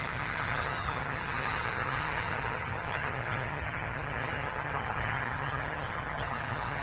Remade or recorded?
remade